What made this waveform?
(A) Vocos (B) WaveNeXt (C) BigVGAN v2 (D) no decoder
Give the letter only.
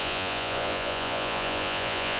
A